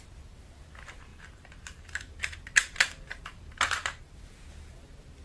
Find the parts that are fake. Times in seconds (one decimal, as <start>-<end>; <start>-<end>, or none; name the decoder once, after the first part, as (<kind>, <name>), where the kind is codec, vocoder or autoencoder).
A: 1.1-4.2 (vocoder, BigVGAN v2)